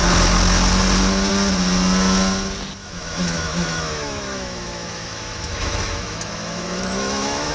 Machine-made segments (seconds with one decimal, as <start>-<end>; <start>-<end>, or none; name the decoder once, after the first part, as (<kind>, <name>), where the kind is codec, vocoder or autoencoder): 2.8-7.5 (autoencoder, DAC-VAE)